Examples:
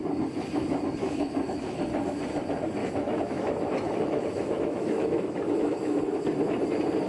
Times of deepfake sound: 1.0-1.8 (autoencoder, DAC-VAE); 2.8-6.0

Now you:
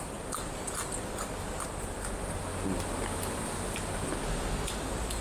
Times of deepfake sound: none

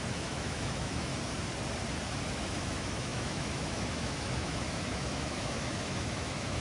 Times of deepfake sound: 0.0-1.1 (autoencoder, DAC-VAE); 2.3-6.6

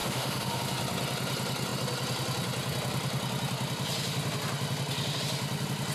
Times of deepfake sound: 0.0-0.6 (autoencoder, DAC-VAE)

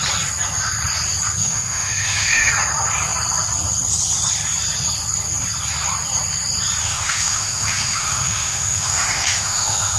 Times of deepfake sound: 1.4-2.5 (autoencoder, DAC-VAE); 6.8-10.0

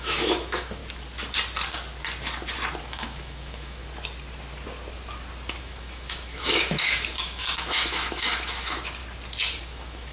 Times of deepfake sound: 0.0-0.8 (autoencoder, DAC-VAE); 2.8-3.8; 5.6-9.0; 9.6-10.1

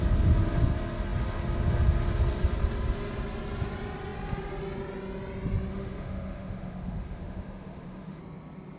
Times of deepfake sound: 5.7-8.2 (autoencoder, DAC-VAE)